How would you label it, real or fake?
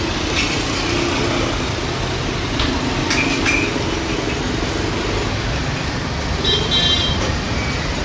real